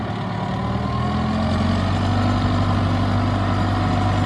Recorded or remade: recorded